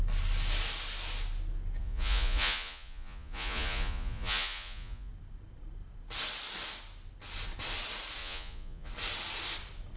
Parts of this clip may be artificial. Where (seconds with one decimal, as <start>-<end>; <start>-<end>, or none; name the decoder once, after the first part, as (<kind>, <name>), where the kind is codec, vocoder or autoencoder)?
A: 1.8-5.1 (vocoder, Vocos); 8.2-8.9